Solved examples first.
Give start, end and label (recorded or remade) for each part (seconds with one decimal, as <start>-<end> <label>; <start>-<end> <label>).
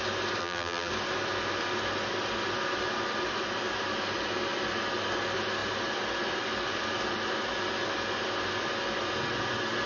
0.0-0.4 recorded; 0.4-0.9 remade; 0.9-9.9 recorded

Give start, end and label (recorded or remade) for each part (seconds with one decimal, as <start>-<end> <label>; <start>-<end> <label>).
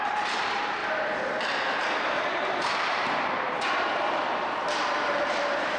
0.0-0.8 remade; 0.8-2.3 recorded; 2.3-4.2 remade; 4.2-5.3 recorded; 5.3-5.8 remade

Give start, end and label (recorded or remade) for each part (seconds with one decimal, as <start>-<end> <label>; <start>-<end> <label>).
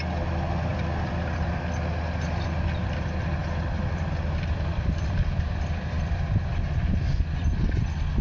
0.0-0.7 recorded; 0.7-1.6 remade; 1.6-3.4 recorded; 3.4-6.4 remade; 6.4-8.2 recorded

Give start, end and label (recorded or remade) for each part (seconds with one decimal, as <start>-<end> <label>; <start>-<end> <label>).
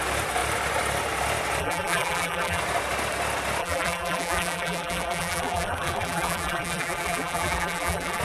0.0-1.6 recorded; 1.6-2.6 remade; 2.6-3.6 recorded; 3.6-8.2 remade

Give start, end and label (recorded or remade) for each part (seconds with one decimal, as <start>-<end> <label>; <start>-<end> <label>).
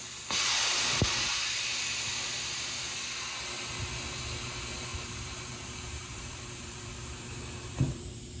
0.0-4.9 recorded; 4.9-6.9 remade; 6.9-8.4 recorded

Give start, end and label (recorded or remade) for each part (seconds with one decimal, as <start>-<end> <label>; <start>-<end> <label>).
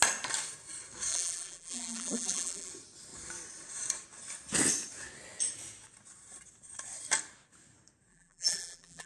0.0-1.1 recorded; 1.1-2.7 remade; 2.7-8.1 recorded; 8.1-9.1 remade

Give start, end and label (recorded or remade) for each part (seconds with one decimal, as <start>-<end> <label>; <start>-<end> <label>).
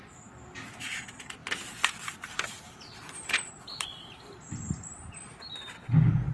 0.0-1.4 recorded; 1.4-2.8 remade; 2.8-3.7 recorded; 3.7-5.2 remade; 5.2-6.3 recorded